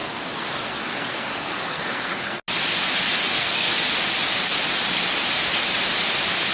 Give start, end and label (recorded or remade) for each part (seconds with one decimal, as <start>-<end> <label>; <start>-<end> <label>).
0.0-2.4 remade; 2.4-3.2 recorded; 3.2-3.7 remade; 3.7-6.5 recorded